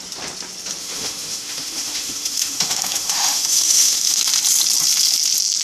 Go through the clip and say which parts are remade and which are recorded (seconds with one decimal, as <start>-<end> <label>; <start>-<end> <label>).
0.0-0.8 recorded; 0.8-4.2 remade; 4.2-5.6 recorded